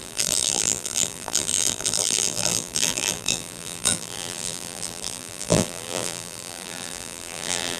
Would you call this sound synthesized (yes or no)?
yes